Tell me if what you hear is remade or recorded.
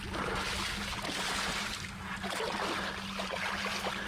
recorded